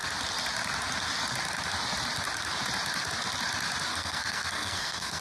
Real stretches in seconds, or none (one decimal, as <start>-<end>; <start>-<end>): 0.0-3.9